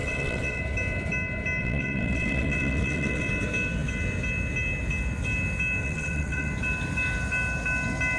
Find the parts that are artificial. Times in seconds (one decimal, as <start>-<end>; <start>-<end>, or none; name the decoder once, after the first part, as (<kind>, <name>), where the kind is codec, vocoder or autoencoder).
0.0-0.6 (vocoder, WaveNeXt); 1.6-3.3; 5.8-6.5